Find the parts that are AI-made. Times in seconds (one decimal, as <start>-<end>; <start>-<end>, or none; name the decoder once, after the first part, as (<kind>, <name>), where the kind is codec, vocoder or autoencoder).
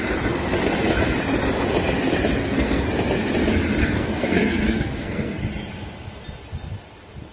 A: 2.4-2.9 (codec, SNAC); 3.8-5.4